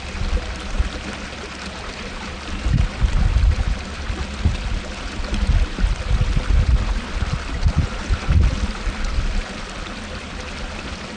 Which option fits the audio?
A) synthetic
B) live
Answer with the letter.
B